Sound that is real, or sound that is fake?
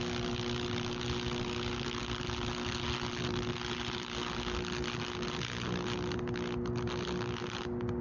real